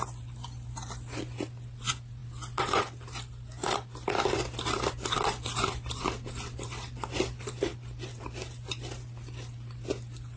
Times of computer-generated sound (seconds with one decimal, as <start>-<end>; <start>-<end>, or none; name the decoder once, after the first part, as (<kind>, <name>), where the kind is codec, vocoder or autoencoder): none